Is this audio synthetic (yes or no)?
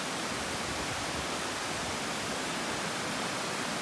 no